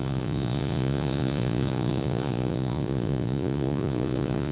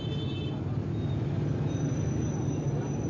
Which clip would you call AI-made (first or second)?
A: first